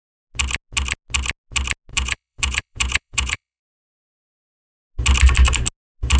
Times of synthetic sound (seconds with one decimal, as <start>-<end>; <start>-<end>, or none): 1.9-3.6